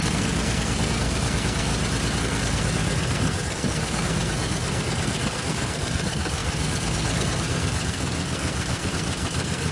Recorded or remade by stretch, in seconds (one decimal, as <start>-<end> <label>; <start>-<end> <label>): 0.0-1.7 remade; 1.7-2.2 recorded; 2.2-9.7 remade